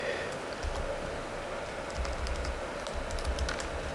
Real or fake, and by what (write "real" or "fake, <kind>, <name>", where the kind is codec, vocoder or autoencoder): real